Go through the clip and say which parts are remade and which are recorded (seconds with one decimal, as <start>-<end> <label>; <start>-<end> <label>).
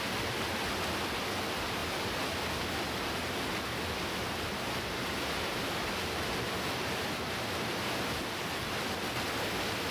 0.0-9.9 recorded